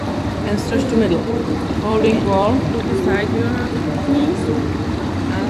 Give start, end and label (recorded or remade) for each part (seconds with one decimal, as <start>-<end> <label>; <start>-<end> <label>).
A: 0.0-5.5 remade